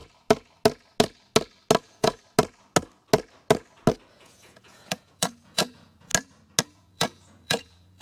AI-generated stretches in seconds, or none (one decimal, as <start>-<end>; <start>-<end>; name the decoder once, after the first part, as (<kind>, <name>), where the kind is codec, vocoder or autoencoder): 1.8-2.2 (vocoder, Vocos); 4.1-6.1; 6.6-8.0